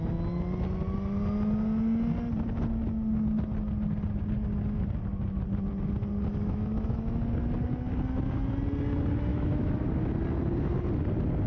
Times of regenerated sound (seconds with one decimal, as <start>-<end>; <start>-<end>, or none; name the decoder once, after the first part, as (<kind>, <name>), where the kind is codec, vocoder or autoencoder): 6.3-7.2 (autoencoder, DAC-VAE); 9.3-9.9

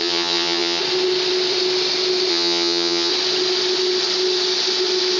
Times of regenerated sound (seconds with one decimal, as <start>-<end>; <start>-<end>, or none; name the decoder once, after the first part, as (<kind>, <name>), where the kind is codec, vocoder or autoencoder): 0.0-0.8 (vocoder, HiFi-GAN); 2.3-3.1

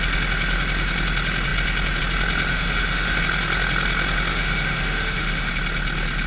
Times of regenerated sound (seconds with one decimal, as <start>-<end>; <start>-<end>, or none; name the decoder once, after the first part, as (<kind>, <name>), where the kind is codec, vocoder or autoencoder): 2.5-3.2 (autoencoder, DAC-VAE); 4.3-5.5

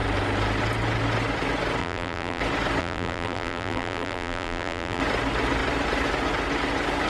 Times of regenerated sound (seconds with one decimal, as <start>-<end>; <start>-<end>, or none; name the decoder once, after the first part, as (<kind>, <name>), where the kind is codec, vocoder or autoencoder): 1.8-2.4 (vocoder, BigVGAN v2); 2.8-5.0